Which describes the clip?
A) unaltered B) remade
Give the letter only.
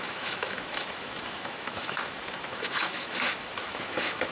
B